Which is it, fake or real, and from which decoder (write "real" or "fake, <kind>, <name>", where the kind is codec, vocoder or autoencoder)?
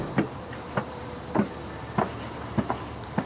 real